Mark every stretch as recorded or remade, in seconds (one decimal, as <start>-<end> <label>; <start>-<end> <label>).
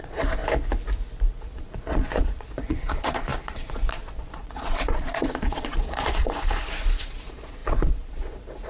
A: 0.0-0.4 remade; 0.4-1.4 recorded; 1.4-8.7 remade